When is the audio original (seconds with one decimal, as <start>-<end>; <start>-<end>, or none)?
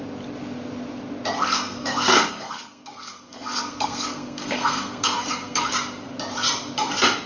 0.0-1.4; 5.7-7.3